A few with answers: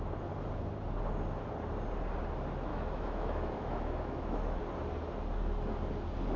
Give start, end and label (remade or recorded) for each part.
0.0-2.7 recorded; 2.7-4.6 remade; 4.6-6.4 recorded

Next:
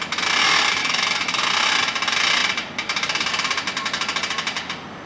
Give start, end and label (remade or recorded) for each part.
0.0-0.8 recorded; 0.8-1.4 remade; 1.4-5.1 recorded

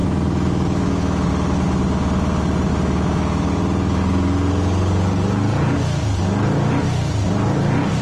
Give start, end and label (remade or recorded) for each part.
0.0-1.3 remade; 1.3-2.7 recorded; 2.7-3.5 remade; 3.5-8.0 recorded

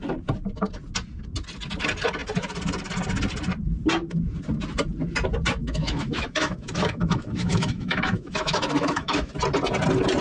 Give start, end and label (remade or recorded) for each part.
0.0-5.6 recorded; 5.6-9.3 remade; 9.3-10.2 recorded

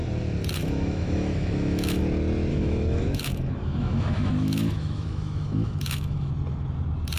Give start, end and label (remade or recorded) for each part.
0.0-0.6 recorded; 0.6-2.0 remade; 2.0-2.5 recorded; 2.5-6.3 remade; 6.3-7.2 recorded